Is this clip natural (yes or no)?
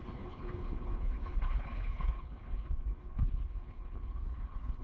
no